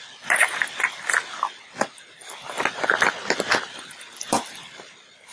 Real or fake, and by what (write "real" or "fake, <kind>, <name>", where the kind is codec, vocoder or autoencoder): real